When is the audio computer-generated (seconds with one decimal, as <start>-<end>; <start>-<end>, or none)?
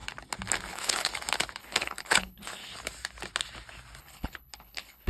0.7-1.1; 1.6-2.7; 4.0-5.1